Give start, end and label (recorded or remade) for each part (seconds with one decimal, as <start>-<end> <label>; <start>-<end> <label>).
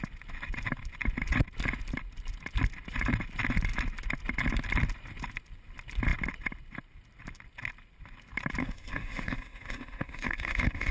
0.0-8.6 recorded; 8.6-10.9 remade